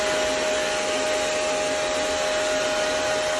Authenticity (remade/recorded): recorded